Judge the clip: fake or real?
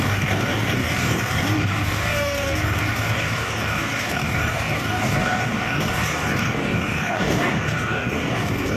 fake